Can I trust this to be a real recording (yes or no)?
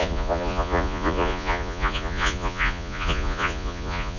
no